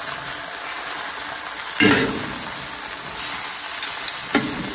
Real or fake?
real